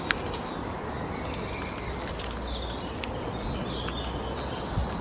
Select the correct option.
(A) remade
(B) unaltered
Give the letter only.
B